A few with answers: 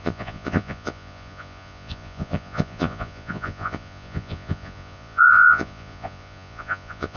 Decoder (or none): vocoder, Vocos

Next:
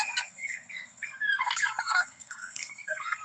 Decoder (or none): codec, SNAC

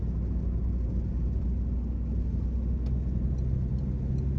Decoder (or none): none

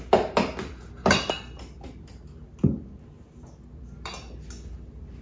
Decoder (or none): none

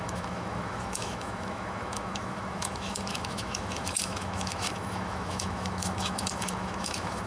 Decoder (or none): autoencoder, DAC-VAE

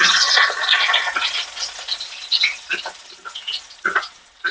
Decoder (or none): vocoder, Vocos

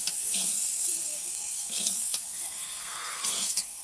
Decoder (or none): codec, SNAC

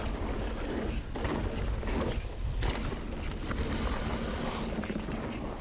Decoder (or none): none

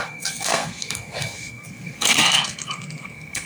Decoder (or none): codec, SNAC